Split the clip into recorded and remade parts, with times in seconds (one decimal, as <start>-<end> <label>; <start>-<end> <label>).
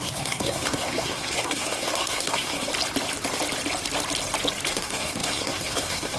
0.0-2.7 remade; 2.7-4.7 recorded; 4.7-6.2 remade